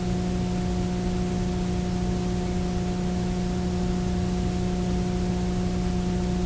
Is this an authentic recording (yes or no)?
yes